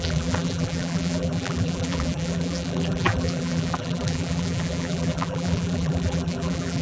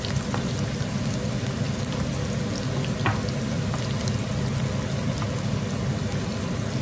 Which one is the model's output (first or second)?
first